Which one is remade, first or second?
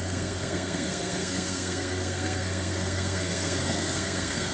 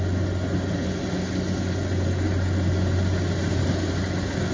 first